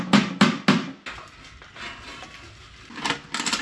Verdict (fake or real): real